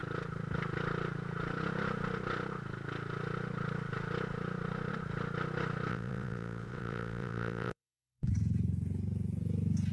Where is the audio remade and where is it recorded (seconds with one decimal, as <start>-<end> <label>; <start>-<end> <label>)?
0.0-5.9 recorded; 5.9-8.3 remade; 8.3-9.9 recorded